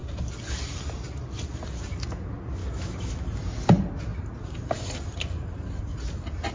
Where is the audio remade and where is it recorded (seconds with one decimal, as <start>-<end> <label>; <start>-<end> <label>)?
0.0-2.6 recorded; 2.6-3.3 remade; 3.3-6.5 recorded